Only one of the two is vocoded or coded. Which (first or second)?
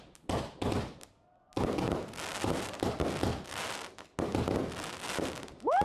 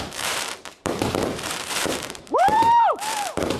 second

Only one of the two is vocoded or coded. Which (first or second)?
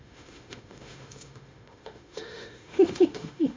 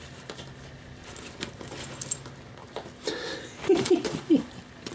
first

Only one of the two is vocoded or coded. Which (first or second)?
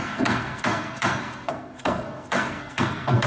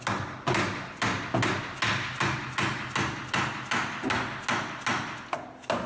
first